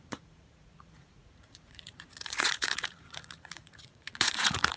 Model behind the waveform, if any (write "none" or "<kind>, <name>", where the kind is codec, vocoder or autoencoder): vocoder, Vocos